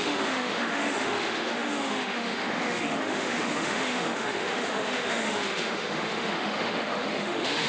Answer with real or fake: fake